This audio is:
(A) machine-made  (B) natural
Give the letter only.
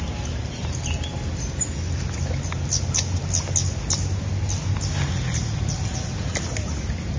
B